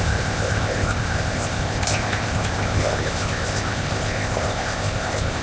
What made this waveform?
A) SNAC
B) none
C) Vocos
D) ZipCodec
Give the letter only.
D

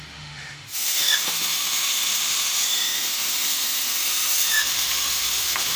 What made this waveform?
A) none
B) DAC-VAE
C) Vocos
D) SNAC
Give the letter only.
B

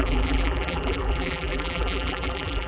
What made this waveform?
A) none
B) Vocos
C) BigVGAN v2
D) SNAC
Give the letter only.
C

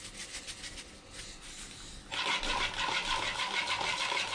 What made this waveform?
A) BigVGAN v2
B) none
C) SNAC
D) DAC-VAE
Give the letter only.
B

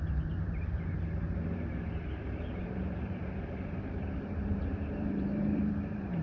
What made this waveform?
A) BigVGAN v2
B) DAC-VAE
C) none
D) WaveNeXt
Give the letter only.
A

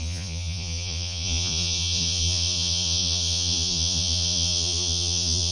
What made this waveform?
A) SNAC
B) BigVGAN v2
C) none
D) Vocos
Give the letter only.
D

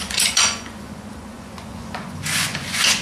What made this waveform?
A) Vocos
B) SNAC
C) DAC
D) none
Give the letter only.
A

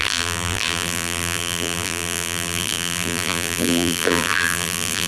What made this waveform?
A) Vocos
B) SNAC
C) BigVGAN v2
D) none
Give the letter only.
C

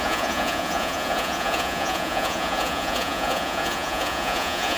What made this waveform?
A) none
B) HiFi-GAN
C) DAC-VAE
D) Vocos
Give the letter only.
D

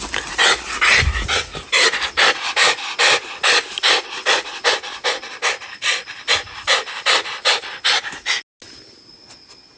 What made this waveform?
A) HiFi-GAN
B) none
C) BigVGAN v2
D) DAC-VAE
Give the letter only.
B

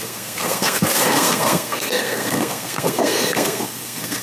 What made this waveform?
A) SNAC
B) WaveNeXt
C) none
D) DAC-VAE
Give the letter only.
A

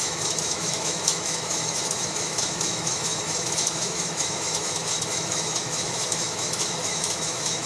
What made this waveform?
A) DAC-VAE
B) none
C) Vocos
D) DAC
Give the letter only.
A